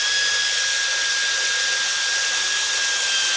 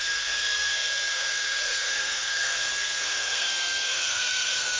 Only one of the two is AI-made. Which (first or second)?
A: second